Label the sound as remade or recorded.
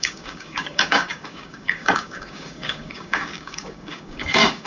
remade